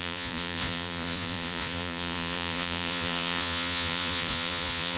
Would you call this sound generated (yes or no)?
yes